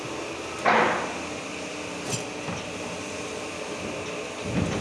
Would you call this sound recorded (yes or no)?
yes